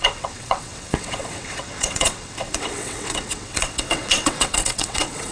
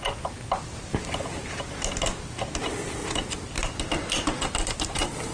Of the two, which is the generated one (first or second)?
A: first